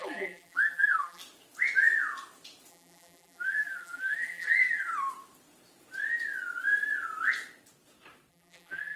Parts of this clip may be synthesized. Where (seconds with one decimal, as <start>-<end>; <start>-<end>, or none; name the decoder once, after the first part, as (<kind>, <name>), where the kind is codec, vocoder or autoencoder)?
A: 0.0-1.2 (vocoder, BigVGAN v2); 2.7-4.9; 8.3-9.0